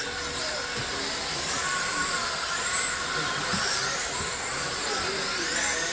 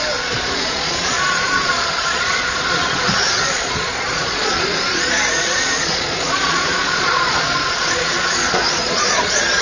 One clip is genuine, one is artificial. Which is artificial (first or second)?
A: second